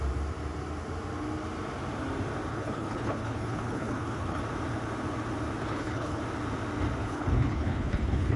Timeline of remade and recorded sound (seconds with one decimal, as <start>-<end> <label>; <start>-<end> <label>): 0.0-2.5 recorded; 2.5-4.4 remade; 4.4-5.6 recorded; 5.6-6.2 remade; 6.2-7.0 recorded; 7.0-8.4 remade